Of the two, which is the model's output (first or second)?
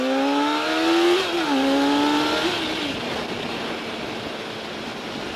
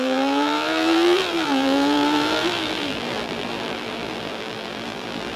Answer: second